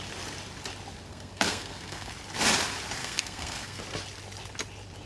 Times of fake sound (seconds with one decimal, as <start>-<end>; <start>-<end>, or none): 1.1-2.1; 3.0-3.8